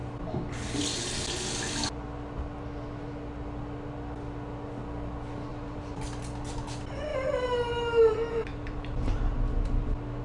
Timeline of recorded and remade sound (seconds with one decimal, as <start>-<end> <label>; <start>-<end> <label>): 0.0-5.5 recorded; 5.5-6.0 remade; 6.0-7.1 recorded; 7.1-8.1 remade; 8.1-8.5 recorded; 8.5-9.2 remade; 9.2-10.2 recorded

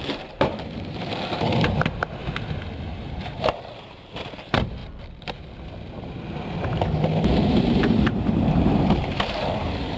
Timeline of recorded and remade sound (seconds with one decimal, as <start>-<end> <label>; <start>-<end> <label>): 0.0-2.2 remade; 2.2-2.9 recorded; 2.9-4.8 remade; 4.8-7.5 recorded; 7.5-10.0 remade

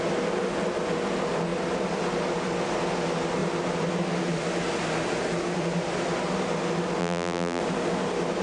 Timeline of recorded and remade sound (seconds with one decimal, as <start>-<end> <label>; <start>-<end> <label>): 0.0-7.0 recorded; 7.0-7.6 remade; 7.6-8.4 recorded

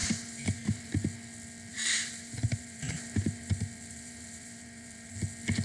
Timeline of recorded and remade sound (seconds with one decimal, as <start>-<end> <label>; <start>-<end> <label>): 0.0-0.9 remade; 0.9-1.7 recorded; 1.7-5.1 remade; 5.1-5.6 recorded

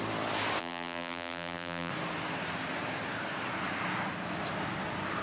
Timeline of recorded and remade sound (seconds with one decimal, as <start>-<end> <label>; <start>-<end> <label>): 0.0-0.6 recorded; 0.6-1.9 remade; 1.9-5.2 recorded

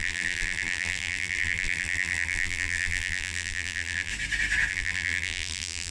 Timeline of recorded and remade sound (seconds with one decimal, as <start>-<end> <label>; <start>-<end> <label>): 0.0-4.1 remade; 4.1-4.7 recorded; 4.7-5.9 remade

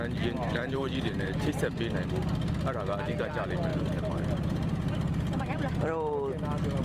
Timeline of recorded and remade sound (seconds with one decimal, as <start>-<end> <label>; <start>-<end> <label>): 0.0-0.5 recorded; 0.5-1.6 remade; 1.6-3.7 recorded; 3.7-5.6 remade; 5.6-6.8 recorded